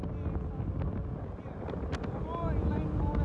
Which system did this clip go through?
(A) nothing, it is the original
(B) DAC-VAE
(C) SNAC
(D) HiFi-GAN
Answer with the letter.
A